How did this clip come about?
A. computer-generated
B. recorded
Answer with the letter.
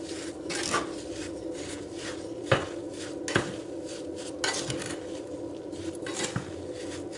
B